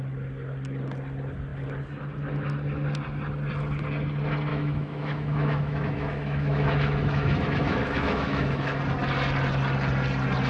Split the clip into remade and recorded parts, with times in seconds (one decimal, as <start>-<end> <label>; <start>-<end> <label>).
0.0-4.5 recorded; 4.5-8.8 remade; 8.8-10.5 recorded